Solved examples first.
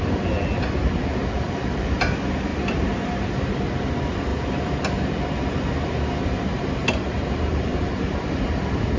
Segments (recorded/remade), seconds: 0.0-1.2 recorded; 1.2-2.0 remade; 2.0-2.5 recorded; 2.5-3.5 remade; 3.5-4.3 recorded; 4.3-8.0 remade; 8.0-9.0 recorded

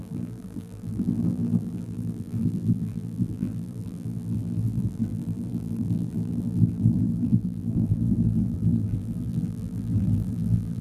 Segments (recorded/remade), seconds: 0.0-10.8 remade